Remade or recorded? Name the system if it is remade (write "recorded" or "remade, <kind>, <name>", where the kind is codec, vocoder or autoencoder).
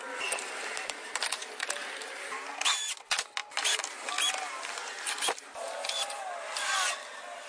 recorded